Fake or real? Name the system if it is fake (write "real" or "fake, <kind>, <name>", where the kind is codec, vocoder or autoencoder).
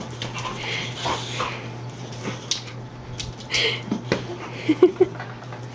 real